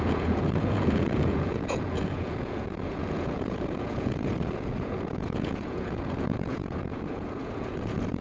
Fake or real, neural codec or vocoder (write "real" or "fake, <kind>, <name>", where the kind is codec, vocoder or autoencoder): fake, vocoder, Vocos